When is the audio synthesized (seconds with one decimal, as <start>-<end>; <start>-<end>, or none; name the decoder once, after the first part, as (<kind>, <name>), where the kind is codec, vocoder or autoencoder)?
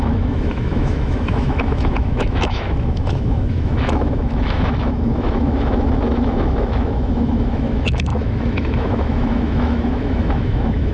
0.0-10.9 (autoencoder, DAC-VAE)